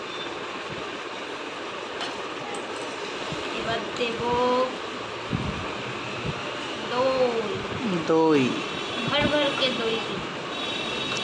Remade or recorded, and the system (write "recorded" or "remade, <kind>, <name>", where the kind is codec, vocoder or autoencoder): recorded